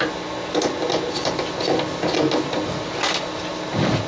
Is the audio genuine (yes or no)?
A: yes